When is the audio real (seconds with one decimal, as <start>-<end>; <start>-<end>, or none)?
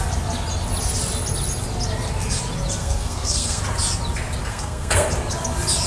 0.0-2.8; 3.6-4.5; 5.1-5.9